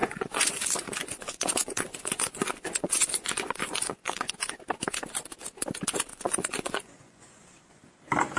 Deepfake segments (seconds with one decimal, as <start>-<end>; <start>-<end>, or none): 0.0-4.3; 6.1-7.8